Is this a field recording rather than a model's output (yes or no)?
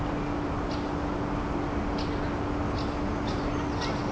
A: yes